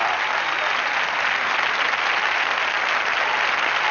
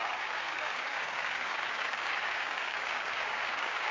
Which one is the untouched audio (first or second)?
first